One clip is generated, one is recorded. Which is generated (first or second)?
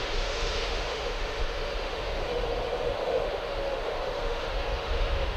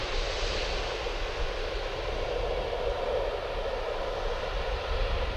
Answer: first